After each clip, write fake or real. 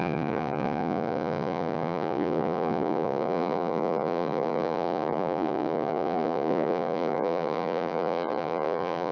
fake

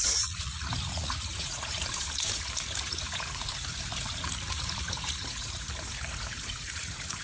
fake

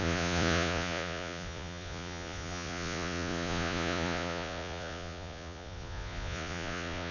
fake